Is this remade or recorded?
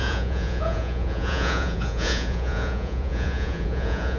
remade